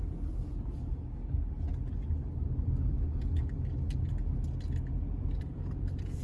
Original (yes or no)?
yes